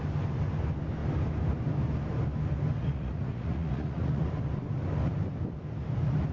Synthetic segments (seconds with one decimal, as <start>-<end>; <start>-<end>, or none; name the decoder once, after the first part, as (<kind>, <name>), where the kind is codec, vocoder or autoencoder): 2.8-4.3 (vocoder, Vocos)